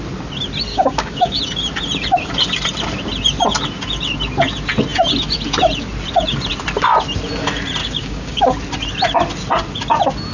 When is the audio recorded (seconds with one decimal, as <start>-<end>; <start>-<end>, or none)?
0.0-0.7; 1.4-7.8; 8.4-10.3